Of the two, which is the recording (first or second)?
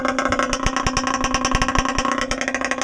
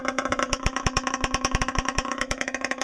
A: first